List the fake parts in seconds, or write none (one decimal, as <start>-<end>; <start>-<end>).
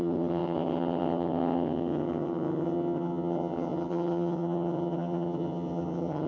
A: 0.0-6.3